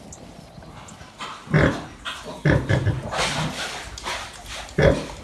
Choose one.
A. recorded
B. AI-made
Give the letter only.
A